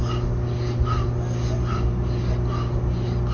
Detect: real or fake real